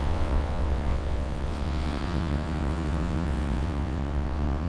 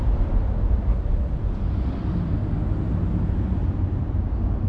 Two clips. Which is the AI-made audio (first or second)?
first